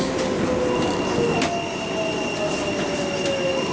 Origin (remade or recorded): recorded